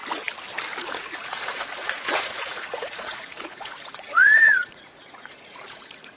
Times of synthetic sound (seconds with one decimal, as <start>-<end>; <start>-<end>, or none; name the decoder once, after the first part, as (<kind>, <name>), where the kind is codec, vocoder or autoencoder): 0.8-6.2 (vocoder, Vocos)